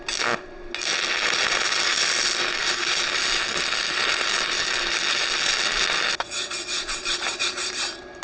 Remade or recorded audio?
recorded